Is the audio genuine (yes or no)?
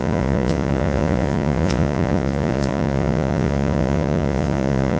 no